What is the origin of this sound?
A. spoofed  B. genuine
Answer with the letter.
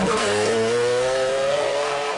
A